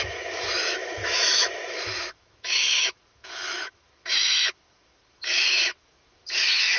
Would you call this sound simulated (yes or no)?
yes